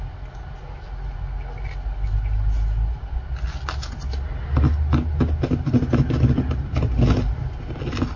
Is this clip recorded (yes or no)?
yes